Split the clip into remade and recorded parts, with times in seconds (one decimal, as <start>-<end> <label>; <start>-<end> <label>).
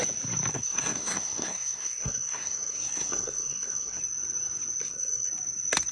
0.0-0.5 recorded; 0.5-4.0 remade; 4.0-4.8 recorded; 4.8-5.3 remade; 5.3-5.9 recorded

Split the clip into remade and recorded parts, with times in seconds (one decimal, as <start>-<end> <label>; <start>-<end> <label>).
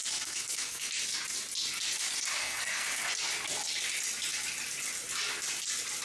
0.0-0.9 remade; 0.9-2.4 recorded; 2.4-3.1 remade; 3.1-6.0 recorded